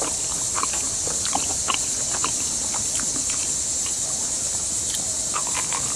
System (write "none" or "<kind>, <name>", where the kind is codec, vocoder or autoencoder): none